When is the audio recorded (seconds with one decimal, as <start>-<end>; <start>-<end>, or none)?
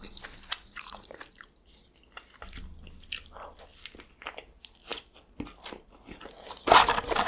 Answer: 0.0-0.6; 1.2-7.3